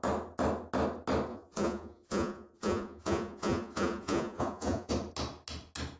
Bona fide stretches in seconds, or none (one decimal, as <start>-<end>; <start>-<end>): 0.0-1.3; 4.9-6.0